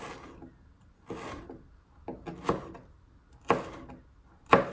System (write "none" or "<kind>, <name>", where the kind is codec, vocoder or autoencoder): none